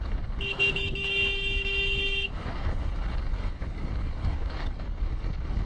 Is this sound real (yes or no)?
no